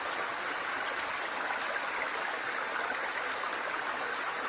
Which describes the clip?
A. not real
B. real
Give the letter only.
B